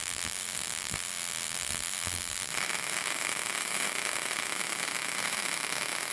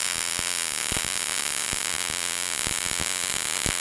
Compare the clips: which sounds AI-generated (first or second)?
first